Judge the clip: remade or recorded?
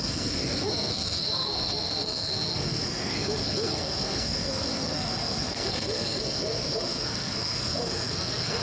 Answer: remade